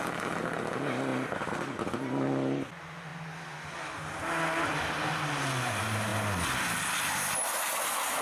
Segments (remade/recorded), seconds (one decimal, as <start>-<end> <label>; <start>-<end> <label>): 0.0-8.2 recorded